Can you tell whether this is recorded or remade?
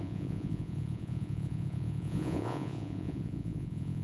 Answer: remade